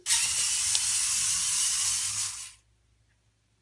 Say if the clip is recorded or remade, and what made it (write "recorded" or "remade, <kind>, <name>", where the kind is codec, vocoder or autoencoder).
recorded